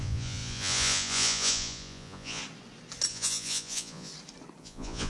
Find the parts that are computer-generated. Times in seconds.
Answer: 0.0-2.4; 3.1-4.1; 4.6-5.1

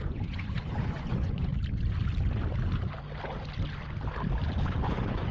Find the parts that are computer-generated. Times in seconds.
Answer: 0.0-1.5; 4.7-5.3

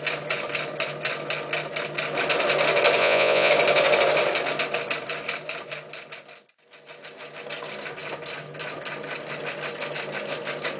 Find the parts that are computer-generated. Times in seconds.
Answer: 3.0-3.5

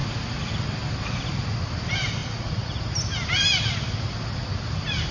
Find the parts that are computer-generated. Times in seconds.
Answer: 2.2-2.8

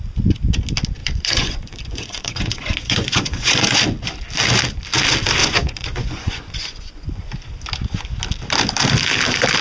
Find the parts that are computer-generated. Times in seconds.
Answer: 1.0-3.8; 5.4-7.3

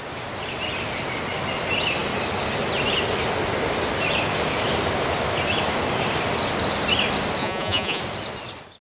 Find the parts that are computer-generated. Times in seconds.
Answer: 7.4-8.0

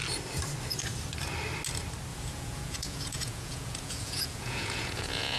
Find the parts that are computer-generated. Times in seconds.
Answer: 2.1-5.4